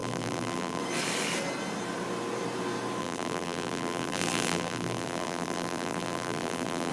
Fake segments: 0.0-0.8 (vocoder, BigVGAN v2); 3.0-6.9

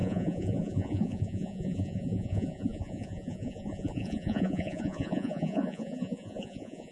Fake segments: 0.0-6.9 (vocoder, Vocos)